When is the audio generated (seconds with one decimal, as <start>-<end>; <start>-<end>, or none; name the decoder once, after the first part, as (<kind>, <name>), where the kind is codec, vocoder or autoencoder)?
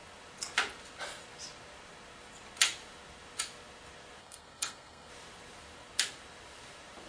4.2-5.1 (codec, SNAC)